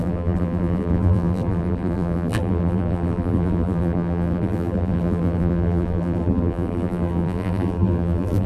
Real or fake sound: fake